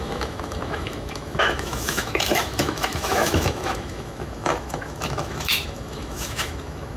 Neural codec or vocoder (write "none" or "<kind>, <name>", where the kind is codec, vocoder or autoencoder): autoencoder, DAC-VAE